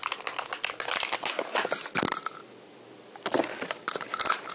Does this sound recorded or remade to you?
recorded